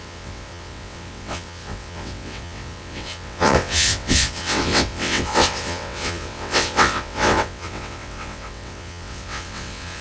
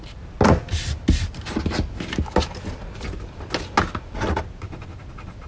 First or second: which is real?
second